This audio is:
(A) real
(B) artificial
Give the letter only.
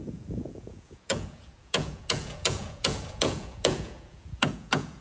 B